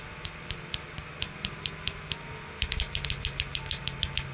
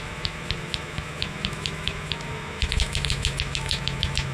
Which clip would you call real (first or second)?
first